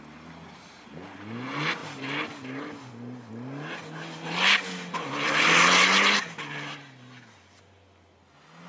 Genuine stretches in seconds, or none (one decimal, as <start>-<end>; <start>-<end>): 0.0-8.7